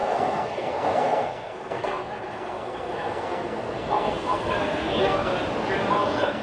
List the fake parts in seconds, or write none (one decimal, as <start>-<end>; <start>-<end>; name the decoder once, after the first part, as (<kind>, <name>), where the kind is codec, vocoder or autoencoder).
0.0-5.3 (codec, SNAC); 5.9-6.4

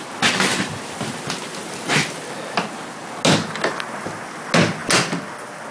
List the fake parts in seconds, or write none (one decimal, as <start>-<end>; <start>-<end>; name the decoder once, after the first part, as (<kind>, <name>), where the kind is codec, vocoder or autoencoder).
none

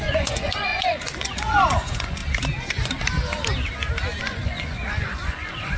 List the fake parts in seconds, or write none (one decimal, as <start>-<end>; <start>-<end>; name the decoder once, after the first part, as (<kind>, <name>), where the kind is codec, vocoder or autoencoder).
0.0-2.2 (vocoder, Vocos); 4.2-5.8

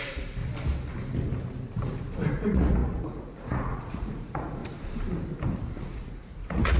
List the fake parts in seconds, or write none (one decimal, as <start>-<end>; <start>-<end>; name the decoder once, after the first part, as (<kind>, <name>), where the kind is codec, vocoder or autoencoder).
0.0-0.4 (vocoder, Vocos); 2.3-4.6; 5.8-6.8

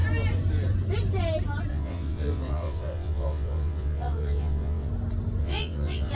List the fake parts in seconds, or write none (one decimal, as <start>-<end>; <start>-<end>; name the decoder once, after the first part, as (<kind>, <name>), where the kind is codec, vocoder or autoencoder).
1.7-4.9 (vocoder, WaveNeXt); 5.4-6.1